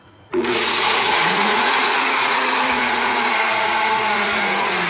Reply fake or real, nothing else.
fake